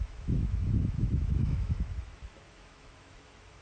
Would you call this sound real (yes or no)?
no